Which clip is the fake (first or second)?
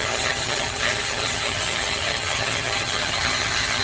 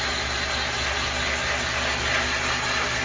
first